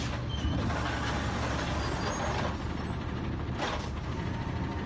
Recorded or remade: recorded